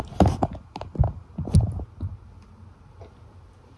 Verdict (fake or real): real